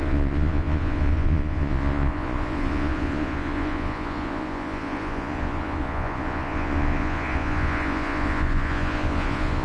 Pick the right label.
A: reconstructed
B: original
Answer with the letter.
A